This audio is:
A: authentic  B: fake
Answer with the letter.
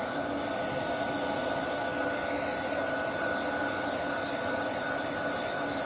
A